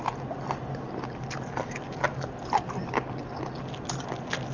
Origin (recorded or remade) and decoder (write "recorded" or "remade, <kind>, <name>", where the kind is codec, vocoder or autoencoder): recorded